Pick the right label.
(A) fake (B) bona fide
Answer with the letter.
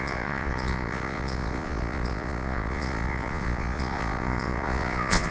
A